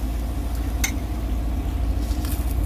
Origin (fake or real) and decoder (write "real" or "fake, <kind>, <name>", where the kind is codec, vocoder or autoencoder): real